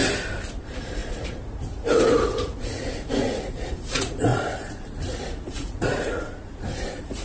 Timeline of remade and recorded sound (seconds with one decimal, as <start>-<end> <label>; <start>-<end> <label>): 0.0-0.6 recorded; 0.6-7.2 remade